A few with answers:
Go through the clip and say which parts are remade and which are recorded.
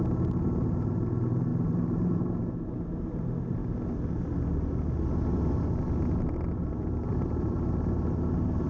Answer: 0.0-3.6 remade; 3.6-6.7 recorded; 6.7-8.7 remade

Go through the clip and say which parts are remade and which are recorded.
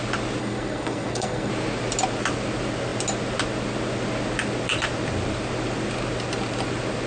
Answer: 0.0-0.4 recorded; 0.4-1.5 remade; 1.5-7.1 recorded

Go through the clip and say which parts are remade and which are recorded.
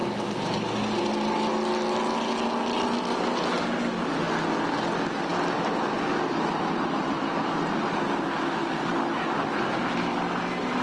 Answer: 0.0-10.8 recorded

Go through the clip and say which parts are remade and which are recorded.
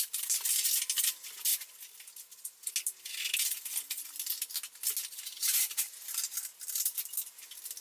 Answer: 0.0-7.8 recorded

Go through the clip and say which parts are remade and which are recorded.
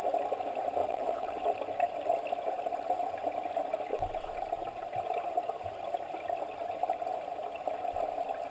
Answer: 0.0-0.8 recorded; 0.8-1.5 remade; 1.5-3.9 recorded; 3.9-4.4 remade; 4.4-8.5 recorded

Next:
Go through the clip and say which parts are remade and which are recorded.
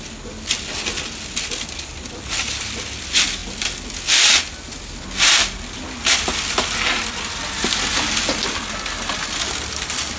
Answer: 0.0-10.2 recorded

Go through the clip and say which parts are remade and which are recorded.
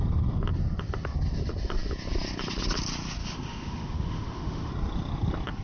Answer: 0.0-3.2 recorded; 3.2-4.7 remade; 4.7-5.6 recorded